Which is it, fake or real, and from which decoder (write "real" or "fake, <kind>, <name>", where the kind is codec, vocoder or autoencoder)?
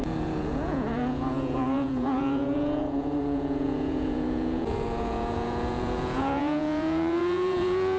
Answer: fake, vocoder, Vocos